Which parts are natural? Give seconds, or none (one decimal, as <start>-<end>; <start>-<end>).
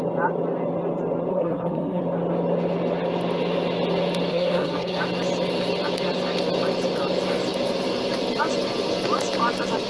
0.0-1.3; 2.0-4.3; 5.0-9.9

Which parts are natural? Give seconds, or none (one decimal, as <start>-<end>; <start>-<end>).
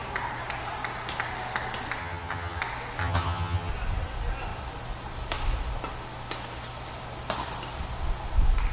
0.0-2.0; 2.6-3.0; 3.7-8.7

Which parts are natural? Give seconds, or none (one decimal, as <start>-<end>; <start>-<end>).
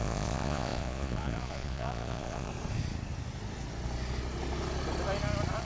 2.5-5.6